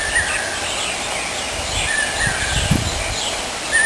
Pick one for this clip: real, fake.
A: real